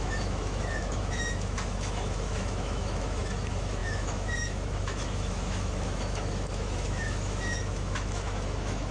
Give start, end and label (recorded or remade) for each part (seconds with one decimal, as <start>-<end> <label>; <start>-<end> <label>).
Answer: 0.0-8.9 remade